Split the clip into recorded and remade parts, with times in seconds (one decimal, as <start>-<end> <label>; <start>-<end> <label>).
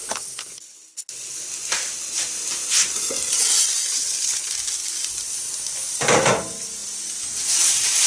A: 0.0-1.5 remade; 1.5-3.9 recorded; 3.9-4.5 remade; 4.5-8.1 recorded